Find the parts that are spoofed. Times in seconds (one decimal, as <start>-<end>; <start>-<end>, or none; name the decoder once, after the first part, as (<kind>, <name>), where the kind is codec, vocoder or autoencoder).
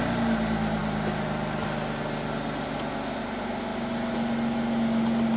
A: none